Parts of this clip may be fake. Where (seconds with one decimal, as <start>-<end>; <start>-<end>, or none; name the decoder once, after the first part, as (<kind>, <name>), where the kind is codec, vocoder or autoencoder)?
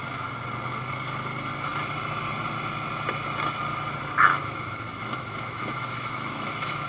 4.3-6.9 (autoencoder, DAC-VAE)